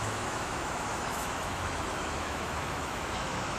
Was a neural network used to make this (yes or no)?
yes